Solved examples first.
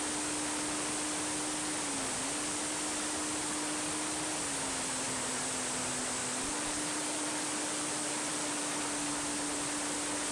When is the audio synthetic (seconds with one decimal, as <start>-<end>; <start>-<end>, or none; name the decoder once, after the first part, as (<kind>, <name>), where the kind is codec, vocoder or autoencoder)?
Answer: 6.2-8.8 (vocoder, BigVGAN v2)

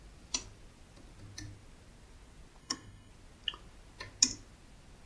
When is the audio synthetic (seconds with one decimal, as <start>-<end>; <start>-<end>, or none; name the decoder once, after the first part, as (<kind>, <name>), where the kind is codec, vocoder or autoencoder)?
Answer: 2.6-3.1 (codec, SNAC)

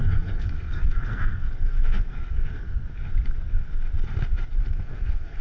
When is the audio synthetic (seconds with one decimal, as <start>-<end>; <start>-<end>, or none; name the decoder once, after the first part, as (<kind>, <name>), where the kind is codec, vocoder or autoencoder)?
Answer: 0.0-2.8 (codec, SNAC); 4.6-5.4